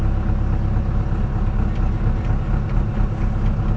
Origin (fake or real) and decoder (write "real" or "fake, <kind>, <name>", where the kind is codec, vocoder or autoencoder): real